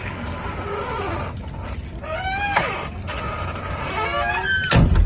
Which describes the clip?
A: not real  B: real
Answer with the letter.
B